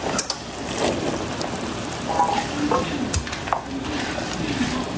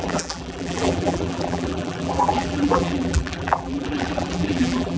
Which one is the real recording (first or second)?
first